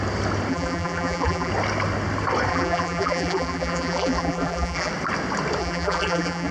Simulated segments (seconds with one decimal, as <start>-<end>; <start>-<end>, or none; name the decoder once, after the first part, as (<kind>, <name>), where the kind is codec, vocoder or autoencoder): 0.5-1.5 (vocoder, BigVGAN v2); 2.5-4.9; 5.6-6.5